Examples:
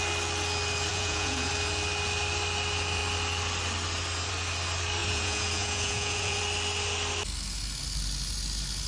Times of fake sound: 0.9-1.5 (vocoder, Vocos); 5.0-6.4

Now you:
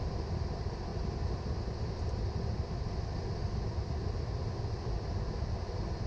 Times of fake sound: none

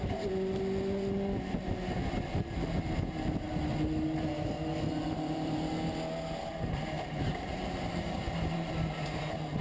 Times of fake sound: 5.0-5.7 (vocoder, BigVGAN v2); 6.4-9.2

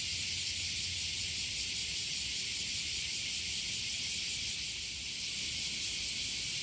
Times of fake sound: 1.8-4.5 (vocoder, BigVGAN v2)

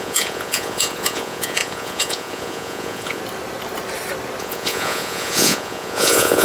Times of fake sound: 0.0-3.2 (vocoder, Vocos); 4.4-6.4